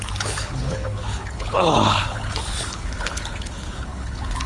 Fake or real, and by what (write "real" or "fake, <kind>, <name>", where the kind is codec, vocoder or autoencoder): fake, codec, HILCodec